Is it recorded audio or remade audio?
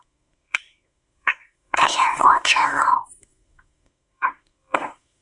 remade